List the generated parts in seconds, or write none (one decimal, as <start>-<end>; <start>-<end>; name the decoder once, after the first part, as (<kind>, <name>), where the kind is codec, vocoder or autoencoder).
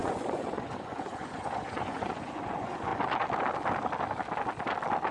0.0-2.9 (vocoder, Vocos)